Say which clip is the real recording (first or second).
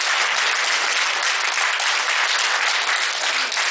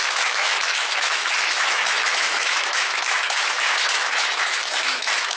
first